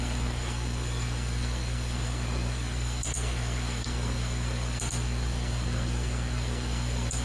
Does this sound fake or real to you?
fake